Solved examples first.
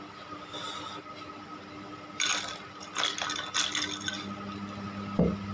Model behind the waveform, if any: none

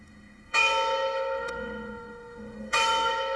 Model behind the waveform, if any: autoencoder, DAC-VAE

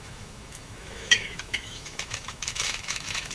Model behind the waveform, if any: autoencoder, DAC-VAE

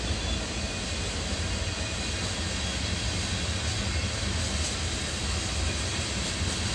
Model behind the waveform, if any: none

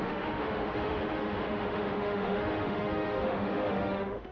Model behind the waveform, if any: autoencoder, DAC-VAE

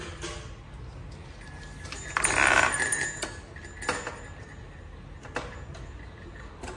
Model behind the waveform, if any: none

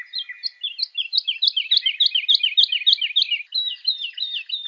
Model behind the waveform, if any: none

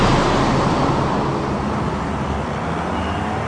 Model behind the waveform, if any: none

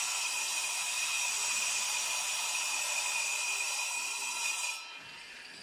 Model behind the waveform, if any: none